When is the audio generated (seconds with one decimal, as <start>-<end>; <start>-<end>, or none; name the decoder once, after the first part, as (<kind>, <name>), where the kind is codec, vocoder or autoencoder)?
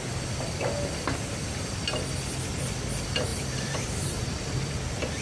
3.3-4.5 (vocoder, BigVGAN v2)